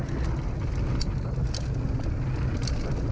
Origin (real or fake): real